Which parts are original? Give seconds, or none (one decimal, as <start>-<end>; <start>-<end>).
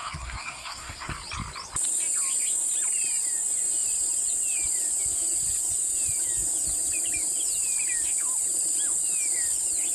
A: 1.1-9.9